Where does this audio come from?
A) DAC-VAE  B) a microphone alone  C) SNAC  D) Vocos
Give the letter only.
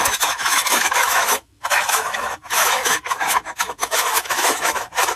A